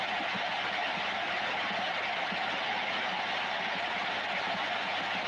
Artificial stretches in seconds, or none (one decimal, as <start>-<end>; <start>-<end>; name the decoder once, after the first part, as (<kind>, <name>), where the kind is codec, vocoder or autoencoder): none